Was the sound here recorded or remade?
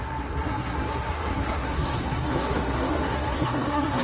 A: remade